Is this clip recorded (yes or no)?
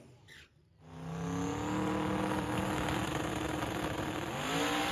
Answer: yes